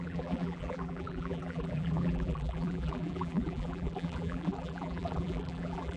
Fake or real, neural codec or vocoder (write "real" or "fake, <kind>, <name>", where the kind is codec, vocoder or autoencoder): fake, vocoder, BigVGAN v2